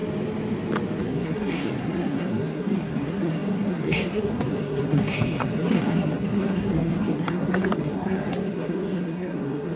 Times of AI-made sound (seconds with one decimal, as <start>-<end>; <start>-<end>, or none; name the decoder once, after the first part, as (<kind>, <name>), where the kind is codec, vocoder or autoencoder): 1.0-9.8 (codec, SNAC)

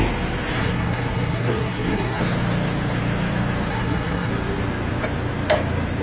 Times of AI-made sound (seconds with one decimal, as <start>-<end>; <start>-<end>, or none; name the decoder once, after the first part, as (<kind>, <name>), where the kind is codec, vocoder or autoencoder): 0.6-2.2 (codec, SNAC); 3.7-4.3

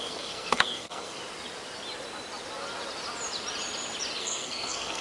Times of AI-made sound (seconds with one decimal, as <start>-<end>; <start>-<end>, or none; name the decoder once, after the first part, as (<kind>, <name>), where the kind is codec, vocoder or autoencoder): 0.0-1.2 (codec, SNAC); 4.2-5.0

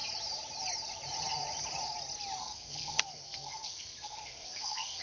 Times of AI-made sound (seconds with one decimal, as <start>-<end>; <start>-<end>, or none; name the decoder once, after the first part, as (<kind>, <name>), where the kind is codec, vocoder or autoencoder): 2.4-5.0 (codec, SNAC)